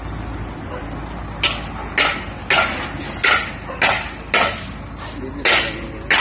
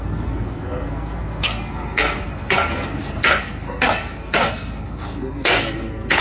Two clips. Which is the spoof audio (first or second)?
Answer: second